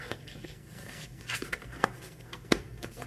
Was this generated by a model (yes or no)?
yes